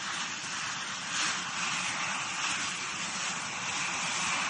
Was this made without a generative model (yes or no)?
yes